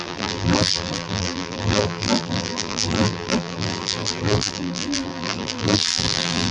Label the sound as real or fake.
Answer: fake